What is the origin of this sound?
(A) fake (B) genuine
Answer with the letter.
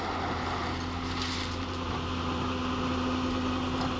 B